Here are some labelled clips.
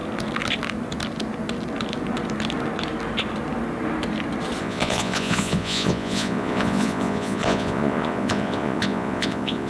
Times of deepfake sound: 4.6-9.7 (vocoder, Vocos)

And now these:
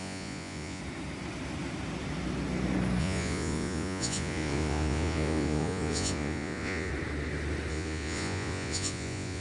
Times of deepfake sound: 0.0-0.8 (vocoder, Vocos); 3.0-6.9; 7.7-9.4

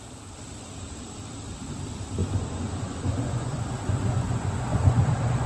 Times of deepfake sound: 2.2-5.5 (vocoder, Vocos)

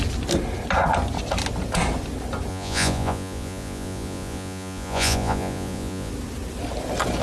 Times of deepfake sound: 2.5-6.1 (vocoder, Vocos)

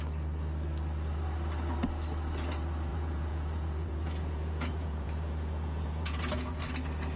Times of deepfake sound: 2.9-6.6 (vocoder, Vocos)

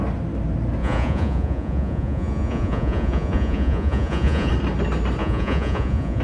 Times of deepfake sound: 0.8-4.5 (vocoder, Vocos); 5.2-6.2